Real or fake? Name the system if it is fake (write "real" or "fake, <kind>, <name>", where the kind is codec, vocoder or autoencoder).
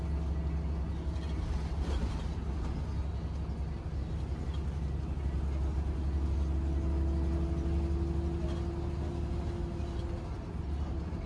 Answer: real